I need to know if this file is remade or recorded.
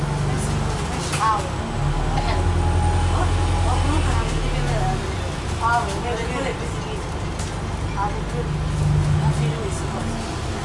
recorded